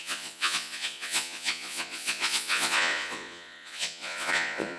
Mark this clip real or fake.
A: fake